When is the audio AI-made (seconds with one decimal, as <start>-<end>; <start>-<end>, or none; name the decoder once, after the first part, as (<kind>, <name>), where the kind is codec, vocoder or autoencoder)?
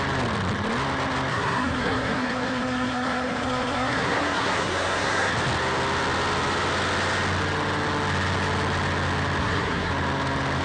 1.3-5.3 (codec, SNAC); 9.4-9.9